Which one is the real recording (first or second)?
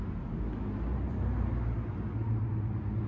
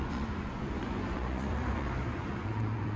first